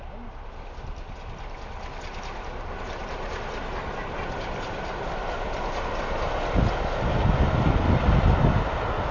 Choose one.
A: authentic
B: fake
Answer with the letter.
A